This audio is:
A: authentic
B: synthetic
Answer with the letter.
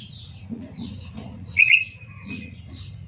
B